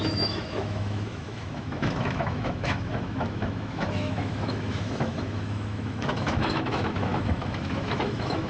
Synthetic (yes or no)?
yes